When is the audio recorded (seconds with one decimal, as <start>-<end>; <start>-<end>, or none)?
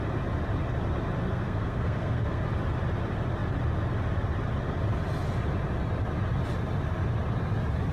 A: 0.0-1.2; 2.4-7.9